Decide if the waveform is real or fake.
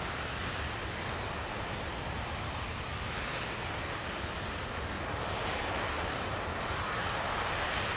real